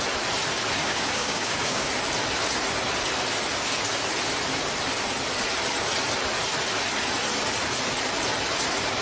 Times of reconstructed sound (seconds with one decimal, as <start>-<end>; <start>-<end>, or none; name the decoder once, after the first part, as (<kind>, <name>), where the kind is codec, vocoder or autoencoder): 0.8-1.9 (codec, DAC)